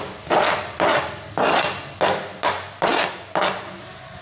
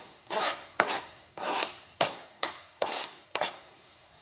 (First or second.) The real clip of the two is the first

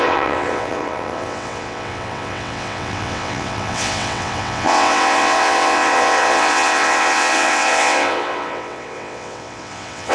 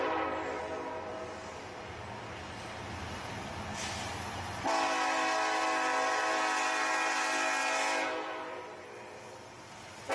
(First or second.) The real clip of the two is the second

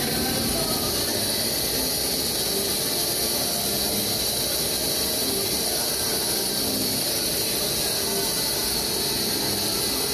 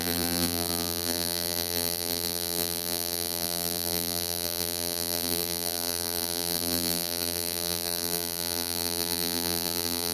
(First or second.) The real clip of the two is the first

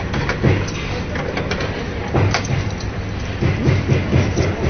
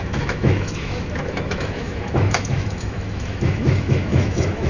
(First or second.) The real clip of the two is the first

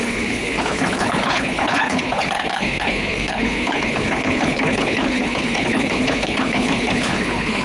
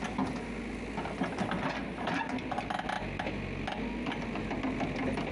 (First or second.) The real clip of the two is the second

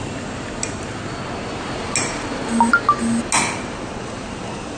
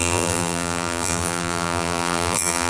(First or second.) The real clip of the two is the first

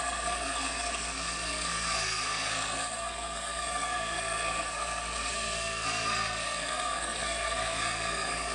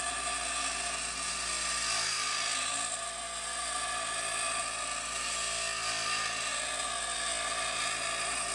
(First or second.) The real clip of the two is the second